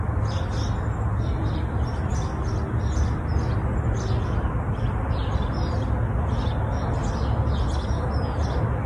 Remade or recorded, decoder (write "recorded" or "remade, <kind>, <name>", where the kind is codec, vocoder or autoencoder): recorded